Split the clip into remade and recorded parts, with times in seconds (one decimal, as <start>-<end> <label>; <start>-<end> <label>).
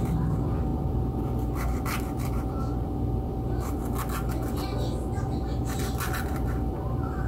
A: 0.0-3.8 remade; 3.8-5.6 recorded; 5.6-7.3 remade